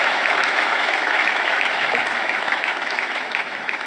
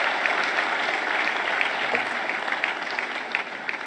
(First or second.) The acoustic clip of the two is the second